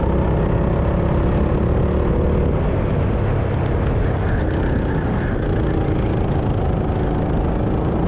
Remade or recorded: recorded